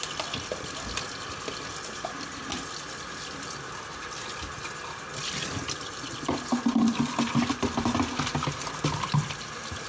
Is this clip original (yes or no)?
yes